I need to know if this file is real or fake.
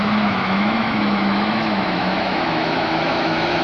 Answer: fake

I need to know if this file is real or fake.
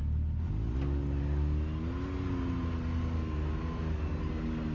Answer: real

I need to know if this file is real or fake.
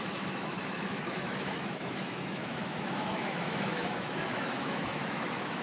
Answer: fake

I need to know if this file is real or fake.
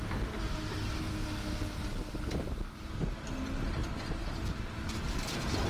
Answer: real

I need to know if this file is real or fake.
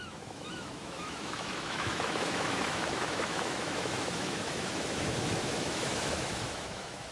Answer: fake